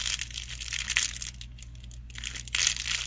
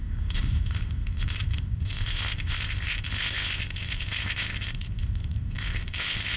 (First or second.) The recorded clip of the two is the first